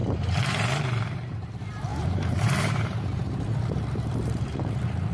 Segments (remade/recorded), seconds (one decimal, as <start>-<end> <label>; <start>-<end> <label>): 0.0-5.1 remade

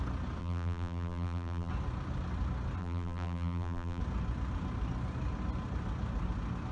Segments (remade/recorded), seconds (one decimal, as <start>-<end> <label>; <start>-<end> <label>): 0.0-0.4 recorded; 0.4-1.7 remade; 1.7-2.8 recorded; 2.8-4.0 remade; 4.0-6.7 recorded

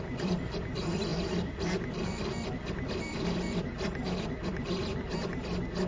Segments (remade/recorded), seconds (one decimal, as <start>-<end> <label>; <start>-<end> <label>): 0.0-5.9 remade